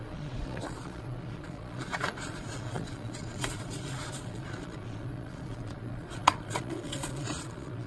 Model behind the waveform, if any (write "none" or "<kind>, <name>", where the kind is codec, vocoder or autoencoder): vocoder, Vocos